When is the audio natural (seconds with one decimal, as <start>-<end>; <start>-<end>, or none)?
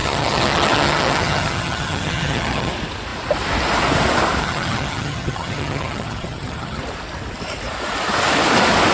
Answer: 2.7-4.4; 6.8-8.9